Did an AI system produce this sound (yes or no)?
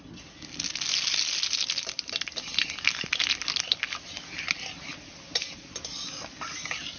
no